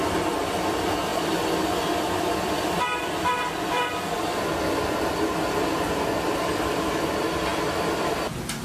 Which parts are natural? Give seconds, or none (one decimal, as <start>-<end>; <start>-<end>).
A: 0.0-1.1; 4.4-8.6